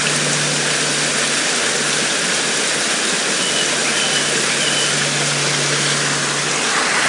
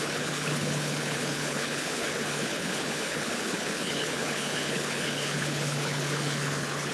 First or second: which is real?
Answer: first